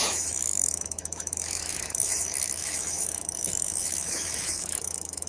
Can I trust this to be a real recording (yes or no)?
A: no